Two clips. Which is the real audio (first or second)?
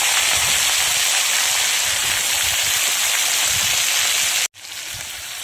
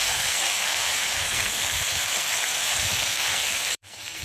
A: first